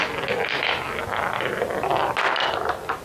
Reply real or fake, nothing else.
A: real